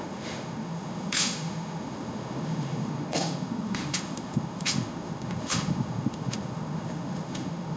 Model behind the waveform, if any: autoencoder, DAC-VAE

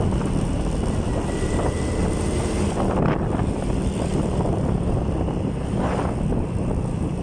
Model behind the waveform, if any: none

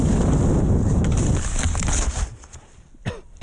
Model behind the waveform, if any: none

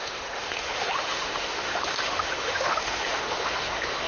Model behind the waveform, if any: autoencoder, DAC-VAE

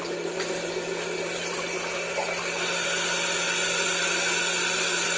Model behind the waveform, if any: none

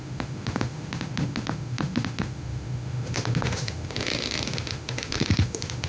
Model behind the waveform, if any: autoencoder, DAC-VAE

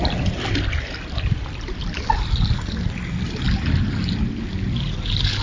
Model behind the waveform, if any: none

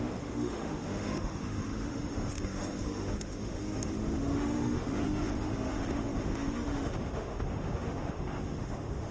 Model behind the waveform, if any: autoencoder, DAC-VAE